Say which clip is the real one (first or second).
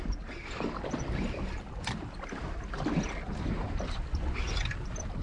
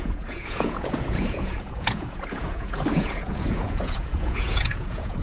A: first